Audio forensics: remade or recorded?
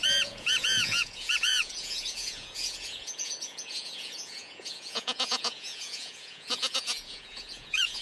remade